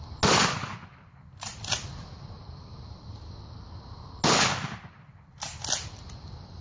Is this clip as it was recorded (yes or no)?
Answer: yes